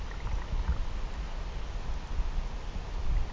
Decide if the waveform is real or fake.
real